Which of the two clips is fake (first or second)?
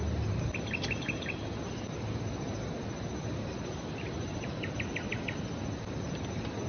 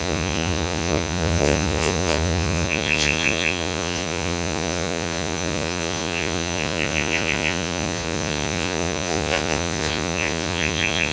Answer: second